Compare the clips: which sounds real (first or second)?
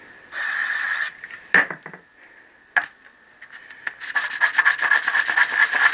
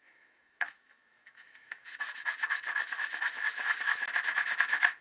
first